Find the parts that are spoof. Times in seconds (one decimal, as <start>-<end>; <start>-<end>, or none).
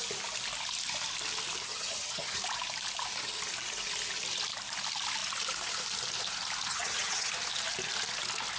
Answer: 1.7-2.4; 6.7-7.3